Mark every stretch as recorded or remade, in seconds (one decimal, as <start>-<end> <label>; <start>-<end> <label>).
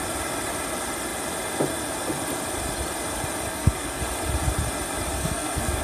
0.0-3.5 recorded; 3.5-4.0 remade; 4.0-5.2 recorded; 5.2-5.8 remade